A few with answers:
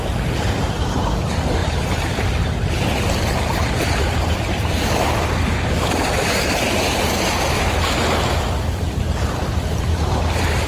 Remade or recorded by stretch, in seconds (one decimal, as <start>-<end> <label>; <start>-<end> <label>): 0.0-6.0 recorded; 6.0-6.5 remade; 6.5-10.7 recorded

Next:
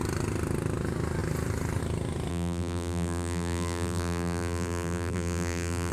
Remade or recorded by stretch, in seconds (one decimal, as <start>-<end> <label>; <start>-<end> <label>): 0.0-2.3 recorded; 2.3-5.9 remade

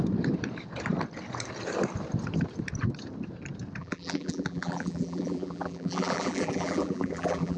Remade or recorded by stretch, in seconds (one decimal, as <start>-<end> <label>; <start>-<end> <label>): 0.0-3.8 recorded; 3.8-7.6 remade

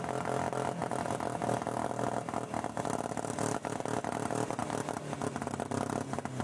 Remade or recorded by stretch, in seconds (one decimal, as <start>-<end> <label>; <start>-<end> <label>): 0.0-6.4 recorded

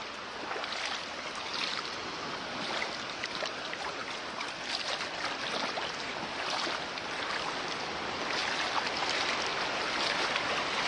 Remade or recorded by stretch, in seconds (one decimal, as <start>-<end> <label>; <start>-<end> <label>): 0.0-10.9 recorded